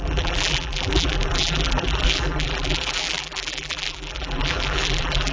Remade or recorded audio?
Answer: remade